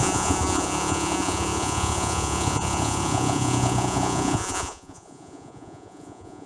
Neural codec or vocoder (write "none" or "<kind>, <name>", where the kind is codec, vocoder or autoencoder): vocoder, Vocos